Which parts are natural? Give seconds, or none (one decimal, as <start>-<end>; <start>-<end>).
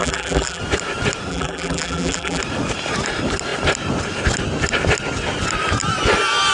0.6-1.3; 2.4-6.5